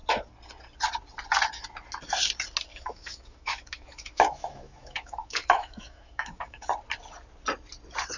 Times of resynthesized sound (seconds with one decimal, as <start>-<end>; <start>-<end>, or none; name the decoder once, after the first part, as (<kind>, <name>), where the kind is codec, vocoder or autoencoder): 2.7-6.7 (autoencoder, DAC-VAE)